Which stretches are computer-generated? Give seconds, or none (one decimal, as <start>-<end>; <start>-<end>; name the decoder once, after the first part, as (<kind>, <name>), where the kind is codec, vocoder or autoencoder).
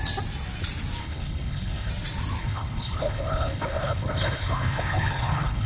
1.0-1.9 (codec, HILCodec); 2.4-5.7